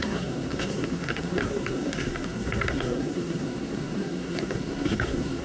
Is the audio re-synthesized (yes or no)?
yes